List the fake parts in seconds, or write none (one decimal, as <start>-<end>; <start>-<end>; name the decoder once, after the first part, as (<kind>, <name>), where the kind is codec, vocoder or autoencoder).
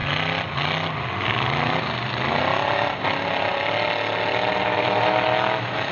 4.7-5.9 (autoencoder, DAC-VAE)